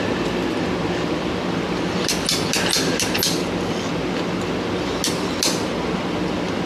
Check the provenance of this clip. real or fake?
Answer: real